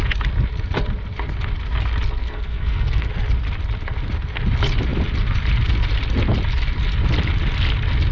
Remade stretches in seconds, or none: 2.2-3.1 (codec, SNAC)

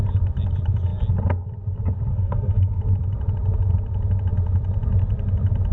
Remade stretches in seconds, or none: 2.1-2.8 (codec, SNAC)

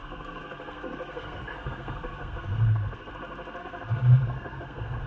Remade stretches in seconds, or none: 0.0-3.1 (codec, SNAC); 3.6-5.1

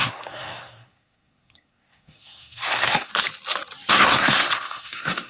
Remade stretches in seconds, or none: 0.0-3.1 (codec, SNAC); 3.9-5.3